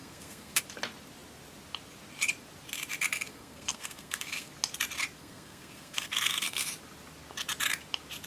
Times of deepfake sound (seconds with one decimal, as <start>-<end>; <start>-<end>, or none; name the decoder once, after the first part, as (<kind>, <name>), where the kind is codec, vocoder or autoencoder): 0.0-0.6 (codec, SNAC); 3.3-4.5; 5.2-6.7